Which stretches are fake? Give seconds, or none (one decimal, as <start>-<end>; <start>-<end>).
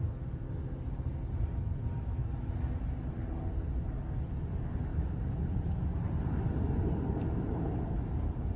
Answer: none